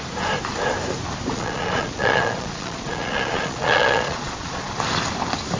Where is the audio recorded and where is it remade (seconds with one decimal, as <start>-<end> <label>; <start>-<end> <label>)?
0.0-1.3 recorded; 1.3-4.7 remade; 4.7-5.6 recorded